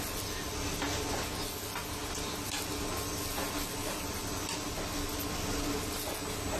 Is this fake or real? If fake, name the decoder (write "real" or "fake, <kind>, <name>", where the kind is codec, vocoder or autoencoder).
real